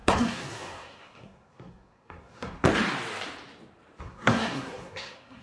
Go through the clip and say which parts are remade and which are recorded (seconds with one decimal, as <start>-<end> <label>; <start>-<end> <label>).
0.0-2.6 remade; 2.6-4.0 recorded; 4.0-5.4 remade